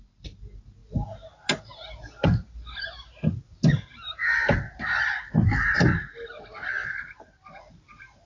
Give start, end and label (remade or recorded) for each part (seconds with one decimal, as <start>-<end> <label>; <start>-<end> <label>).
0.0-8.3 recorded